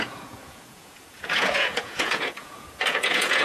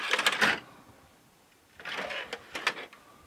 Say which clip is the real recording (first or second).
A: second